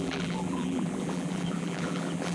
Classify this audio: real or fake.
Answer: fake